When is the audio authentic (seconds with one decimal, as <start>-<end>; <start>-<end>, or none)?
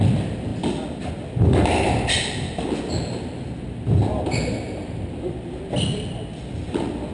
0.0-7.1